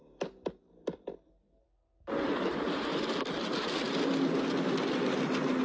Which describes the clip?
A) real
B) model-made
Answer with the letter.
A